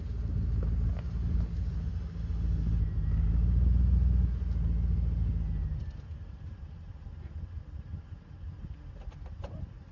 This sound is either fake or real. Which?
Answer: real